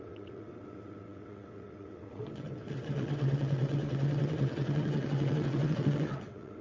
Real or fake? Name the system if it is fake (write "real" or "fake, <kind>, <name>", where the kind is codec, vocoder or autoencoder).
fake, vocoder, WaveNeXt